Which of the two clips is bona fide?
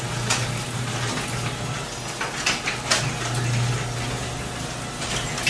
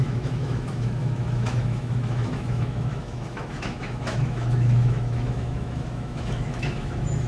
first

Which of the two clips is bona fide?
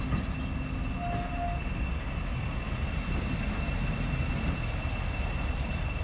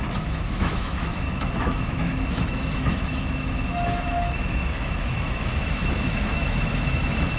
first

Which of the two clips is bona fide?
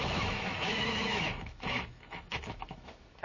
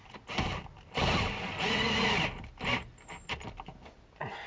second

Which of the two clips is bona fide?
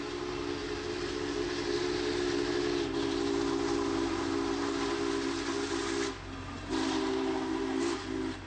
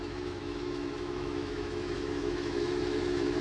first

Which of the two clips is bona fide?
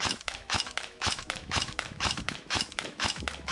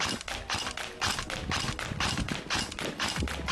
second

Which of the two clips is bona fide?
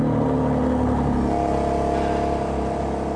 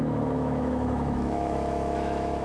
first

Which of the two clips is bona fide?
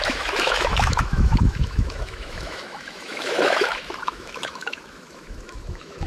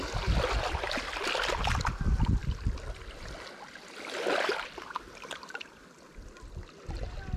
second